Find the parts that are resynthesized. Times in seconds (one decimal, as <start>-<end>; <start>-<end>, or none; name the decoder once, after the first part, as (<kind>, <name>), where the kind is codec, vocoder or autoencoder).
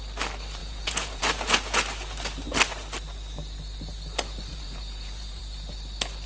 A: 0.6-1.2 (vocoder, Vocos); 4.5-5.4